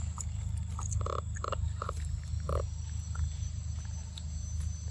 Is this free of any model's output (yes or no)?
yes